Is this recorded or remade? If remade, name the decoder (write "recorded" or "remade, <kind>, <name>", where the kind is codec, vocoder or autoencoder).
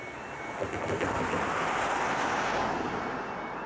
recorded